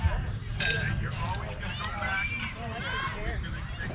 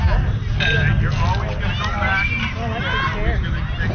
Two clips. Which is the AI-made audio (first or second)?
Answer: first